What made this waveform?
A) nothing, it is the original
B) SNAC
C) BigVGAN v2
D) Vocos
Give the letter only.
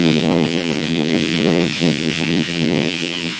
D